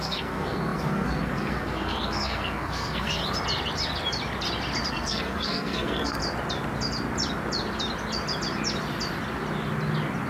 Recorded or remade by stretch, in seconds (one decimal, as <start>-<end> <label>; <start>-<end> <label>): 0.0-3.2 remade; 3.2-4.9 recorded; 4.9-6.2 remade; 6.2-10.3 recorded